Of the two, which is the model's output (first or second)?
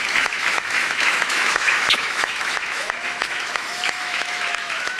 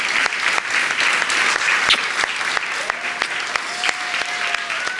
first